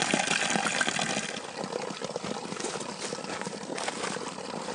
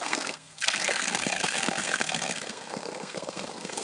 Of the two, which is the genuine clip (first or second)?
first